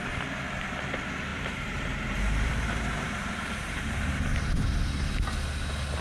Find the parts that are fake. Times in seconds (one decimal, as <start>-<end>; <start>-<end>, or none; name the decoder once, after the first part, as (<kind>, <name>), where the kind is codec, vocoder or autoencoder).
1.3-4.9 (vocoder, BigVGAN v2)